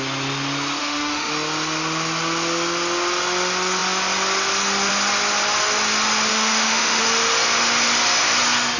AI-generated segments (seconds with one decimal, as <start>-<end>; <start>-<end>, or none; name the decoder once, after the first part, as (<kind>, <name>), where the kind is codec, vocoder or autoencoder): 0.8-1.3 (autoencoder, DAC-VAE); 6.3-7.0